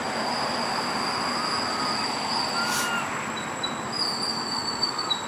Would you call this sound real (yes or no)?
yes